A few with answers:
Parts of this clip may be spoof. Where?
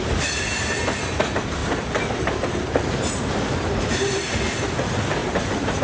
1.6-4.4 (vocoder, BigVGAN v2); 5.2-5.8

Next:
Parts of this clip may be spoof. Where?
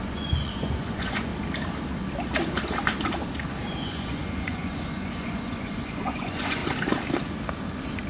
0.0-1.3 (vocoder, Vocos); 3.7-6.6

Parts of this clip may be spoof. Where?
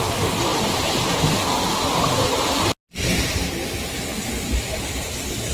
none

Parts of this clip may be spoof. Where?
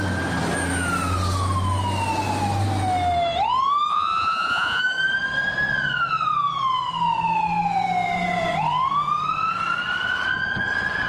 3.9-4.8 (vocoder, Vocos)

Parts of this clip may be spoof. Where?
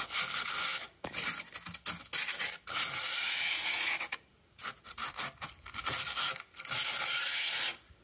3.0-4.6 (vocoder, Vocos)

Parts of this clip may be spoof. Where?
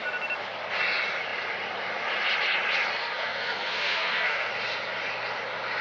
3.0-4.5 (codec, SNAC)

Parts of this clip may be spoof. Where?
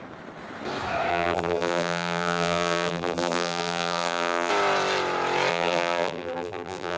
1.1-4.5 (vocoder, BigVGAN v2); 5.5-7.0